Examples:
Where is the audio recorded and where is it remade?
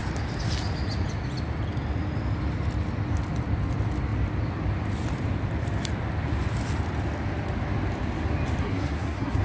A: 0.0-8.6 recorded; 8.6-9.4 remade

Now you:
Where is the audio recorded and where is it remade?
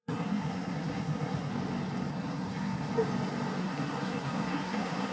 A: 0.0-1.5 remade; 1.5-2.1 recorded; 2.1-2.9 remade; 2.9-3.6 recorded; 3.6-5.1 remade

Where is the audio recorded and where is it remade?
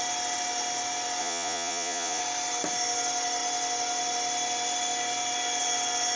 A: 0.0-1.2 recorded; 1.2-2.2 remade; 2.2-6.2 recorded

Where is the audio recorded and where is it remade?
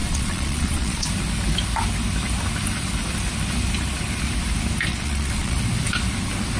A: 0.0-1.1 remade; 1.1-4.9 recorded; 4.9-5.6 remade; 5.6-6.6 recorded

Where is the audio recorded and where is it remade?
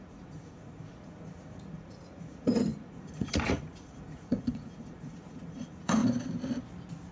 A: 0.0-6.0 remade; 6.0-7.1 recorded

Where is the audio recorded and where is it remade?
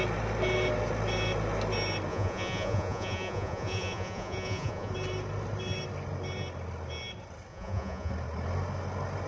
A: 0.0-2.1 recorded; 2.1-4.9 remade; 4.9-7.5 recorded; 7.5-8.1 remade; 8.1-9.3 recorded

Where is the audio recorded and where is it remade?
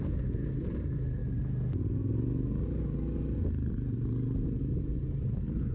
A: 0.0-1.2 remade; 1.2-4.6 recorded; 4.6-5.7 remade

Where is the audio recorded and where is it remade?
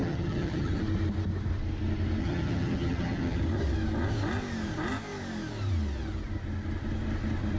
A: 0.0-0.8 remade; 0.8-2.2 recorded; 2.2-3.4 remade; 3.4-7.6 recorded